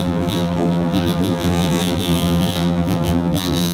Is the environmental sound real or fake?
fake